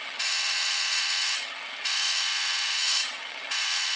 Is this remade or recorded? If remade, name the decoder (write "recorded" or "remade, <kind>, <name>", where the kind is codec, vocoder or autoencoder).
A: remade, vocoder, HiFi-GAN